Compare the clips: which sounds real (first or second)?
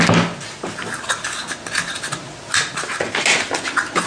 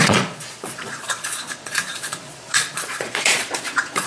first